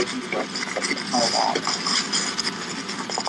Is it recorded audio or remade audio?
recorded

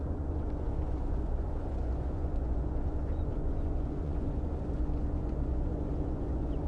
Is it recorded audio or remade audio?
remade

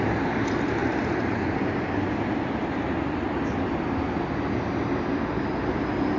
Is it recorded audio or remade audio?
recorded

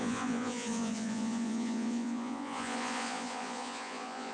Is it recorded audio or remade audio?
remade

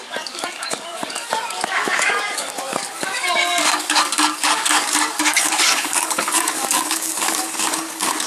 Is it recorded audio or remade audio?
remade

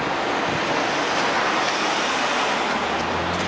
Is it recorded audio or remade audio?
recorded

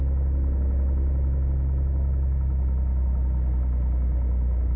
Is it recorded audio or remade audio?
recorded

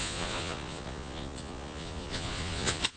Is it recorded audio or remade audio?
remade